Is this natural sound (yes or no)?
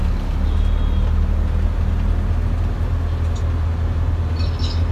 yes